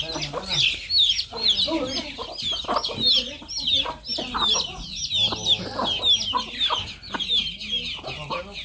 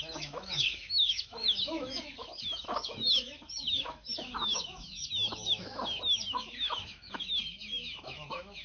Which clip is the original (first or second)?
first